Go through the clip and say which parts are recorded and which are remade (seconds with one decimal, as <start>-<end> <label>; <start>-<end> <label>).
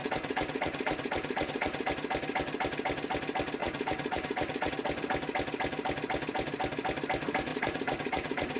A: 0.0-1.9 remade; 1.9-3.6 recorded; 3.6-4.7 remade; 4.7-7.5 recorded; 7.5-8.6 remade